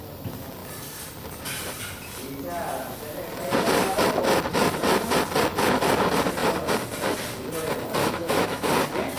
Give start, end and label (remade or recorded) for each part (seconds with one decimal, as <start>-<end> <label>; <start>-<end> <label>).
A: 0.0-8.0 recorded; 8.0-8.7 remade; 8.7-9.2 recorded